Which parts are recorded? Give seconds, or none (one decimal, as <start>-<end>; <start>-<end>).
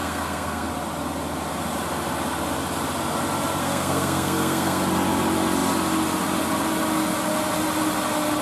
0.7-3.6; 4.8-8.4